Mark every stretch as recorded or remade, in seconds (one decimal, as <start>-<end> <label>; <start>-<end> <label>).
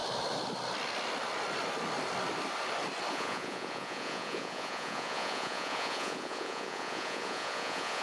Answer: 0.0-3.1 recorded; 3.1-8.0 remade